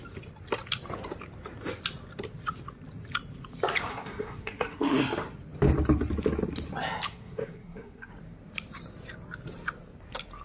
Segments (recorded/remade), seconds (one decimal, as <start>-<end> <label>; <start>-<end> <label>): 0.0-3.9 recorded; 3.9-5.0 remade; 5.0-7.1 recorded; 7.1-8.1 remade; 8.1-10.4 recorded

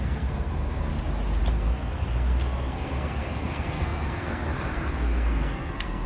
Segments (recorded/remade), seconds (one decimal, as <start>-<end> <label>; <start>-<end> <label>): 0.0-0.9 remade; 0.9-1.5 recorded; 1.5-6.1 remade